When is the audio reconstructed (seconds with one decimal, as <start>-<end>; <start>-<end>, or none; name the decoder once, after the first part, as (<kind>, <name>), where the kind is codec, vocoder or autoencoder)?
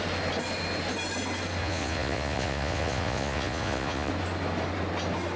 1.6-4.1 (vocoder, Vocos)